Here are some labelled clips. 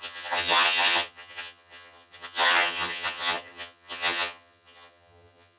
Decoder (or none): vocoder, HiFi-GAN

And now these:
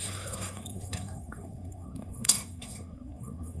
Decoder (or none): codec, SNAC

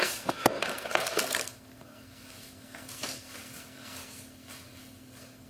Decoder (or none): codec, SNAC